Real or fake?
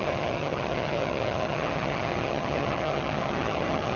fake